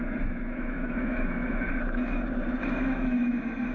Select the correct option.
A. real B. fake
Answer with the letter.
B